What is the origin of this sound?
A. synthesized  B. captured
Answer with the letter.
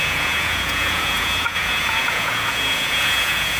A